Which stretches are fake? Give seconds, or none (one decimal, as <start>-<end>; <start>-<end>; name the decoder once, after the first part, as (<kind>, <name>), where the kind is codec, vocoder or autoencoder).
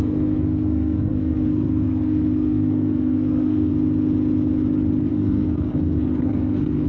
0.0-3.7 (codec, SNAC); 5.1-6.9